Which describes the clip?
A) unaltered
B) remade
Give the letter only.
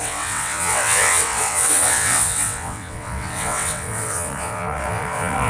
B